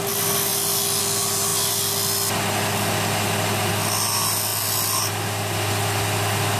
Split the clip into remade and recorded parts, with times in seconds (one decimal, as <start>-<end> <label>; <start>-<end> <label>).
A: 0.0-6.6 recorded